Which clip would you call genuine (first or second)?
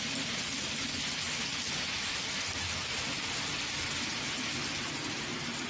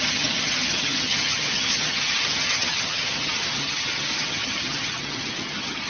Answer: first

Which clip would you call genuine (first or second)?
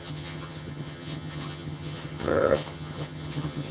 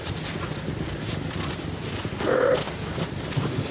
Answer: second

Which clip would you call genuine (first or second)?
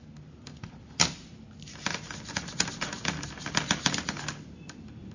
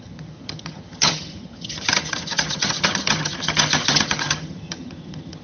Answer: first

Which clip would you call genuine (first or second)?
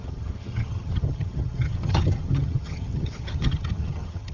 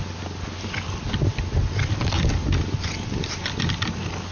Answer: second